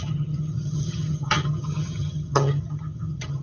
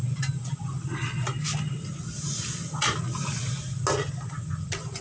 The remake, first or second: first